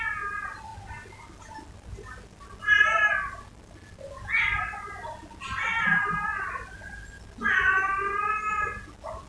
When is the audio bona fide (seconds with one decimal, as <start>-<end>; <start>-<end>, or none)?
0.0-9.3

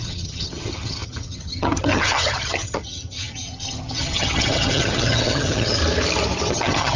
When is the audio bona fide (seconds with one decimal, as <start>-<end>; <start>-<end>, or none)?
5.8-6.5

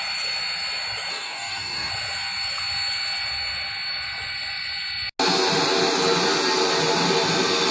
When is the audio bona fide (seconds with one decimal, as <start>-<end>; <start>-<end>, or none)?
0.0-1.1; 1.9-7.7

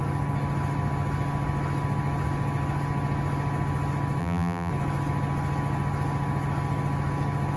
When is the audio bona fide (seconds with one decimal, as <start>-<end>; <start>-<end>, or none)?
0.0-4.2; 4.7-7.6

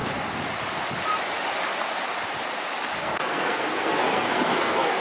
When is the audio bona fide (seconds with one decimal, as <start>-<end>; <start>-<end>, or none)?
0.0-3.0

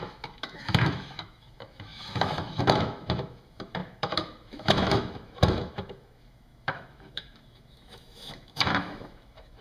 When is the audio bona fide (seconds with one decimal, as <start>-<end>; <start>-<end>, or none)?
none

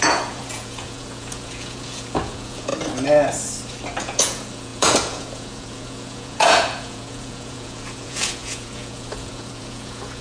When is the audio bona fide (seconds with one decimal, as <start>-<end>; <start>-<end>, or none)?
2.7-4.0